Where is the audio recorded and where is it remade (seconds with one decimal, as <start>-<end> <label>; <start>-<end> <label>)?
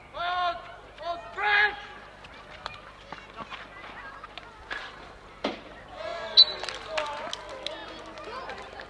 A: 0.0-4.8 recorded; 4.8-5.5 remade; 5.5-8.9 recorded